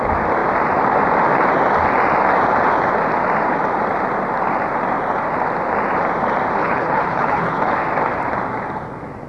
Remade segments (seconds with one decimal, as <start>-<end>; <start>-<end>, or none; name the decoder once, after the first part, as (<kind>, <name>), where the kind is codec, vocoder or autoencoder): 6.6-7.7 (codec, HILCodec)